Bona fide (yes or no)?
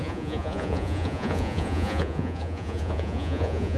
no